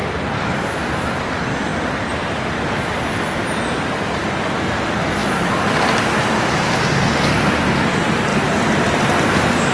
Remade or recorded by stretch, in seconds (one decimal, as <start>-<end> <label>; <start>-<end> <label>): 0.0-0.8 remade; 0.8-5.2 recorded; 5.2-6.3 remade; 6.3-8.3 recorded; 8.3-9.7 remade